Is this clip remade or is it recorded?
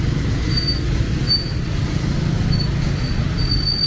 recorded